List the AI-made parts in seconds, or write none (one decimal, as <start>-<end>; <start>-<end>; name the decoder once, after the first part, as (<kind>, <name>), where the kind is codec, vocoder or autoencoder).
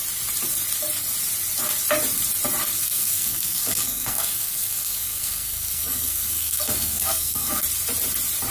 2.8-7.6 (codec, SNAC)